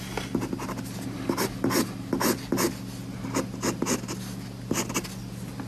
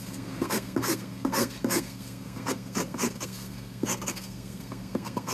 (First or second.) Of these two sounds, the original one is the first